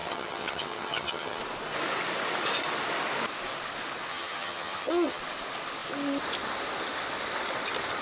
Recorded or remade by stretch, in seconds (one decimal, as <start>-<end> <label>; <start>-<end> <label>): 0.0-1.4 remade; 1.4-4.1 recorded; 4.1-5.2 remade; 5.2-8.0 recorded